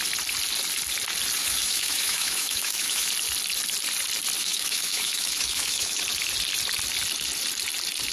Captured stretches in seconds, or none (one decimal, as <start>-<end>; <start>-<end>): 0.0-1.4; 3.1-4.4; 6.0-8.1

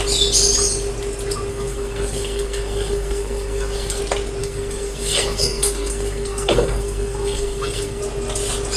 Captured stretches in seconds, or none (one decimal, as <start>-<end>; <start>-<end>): 0.0-1.5; 4.0-4.4; 8.0-8.8

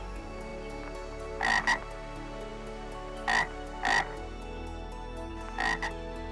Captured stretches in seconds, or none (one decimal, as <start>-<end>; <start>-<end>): 0.0-6.3